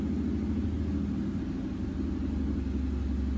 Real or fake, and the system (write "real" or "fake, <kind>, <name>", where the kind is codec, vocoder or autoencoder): real